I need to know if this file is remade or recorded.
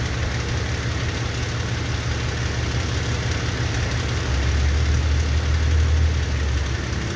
recorded